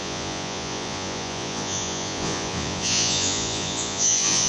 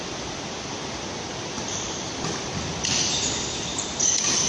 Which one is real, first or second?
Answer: second